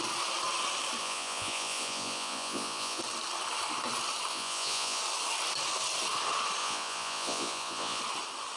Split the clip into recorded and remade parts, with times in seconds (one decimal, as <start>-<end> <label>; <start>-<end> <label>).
0.0-1.0 recorded; 1.0-3.0 remade; 3.0-4.3 recorded; 4.3-5.0 remade; 5.0-6.6 recorded; 6.6-8.0 remade; 8.0-8.6 recorded